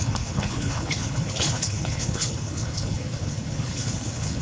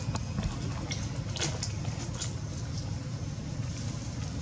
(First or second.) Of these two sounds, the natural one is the second